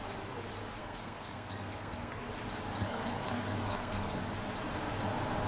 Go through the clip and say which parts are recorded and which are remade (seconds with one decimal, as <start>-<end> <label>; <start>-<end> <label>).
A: 0.0-0.8 recorded; 0.8-2.3 remade; 2.3-2.8 recorded; 2.8-4.2 remade; 4.2-5.5 recorded